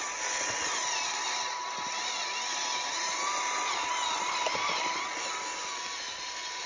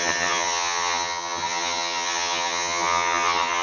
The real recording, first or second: first